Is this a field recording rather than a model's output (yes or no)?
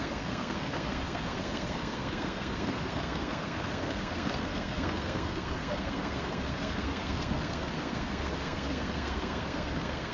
no